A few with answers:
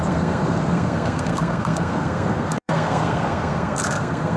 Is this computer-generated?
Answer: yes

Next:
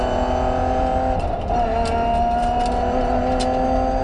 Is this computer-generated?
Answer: no